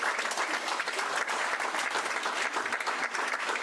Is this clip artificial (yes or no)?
yes